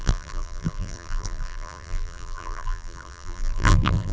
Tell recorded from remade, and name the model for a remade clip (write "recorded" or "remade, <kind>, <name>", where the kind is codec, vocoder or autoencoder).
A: remade, vocoder, BigVGAN v2